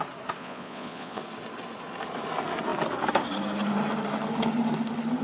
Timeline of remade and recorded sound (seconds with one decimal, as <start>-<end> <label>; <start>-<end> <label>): 0.0-0.4 recorded; 0.4-1.2 remade; 1.2-5.2 recorded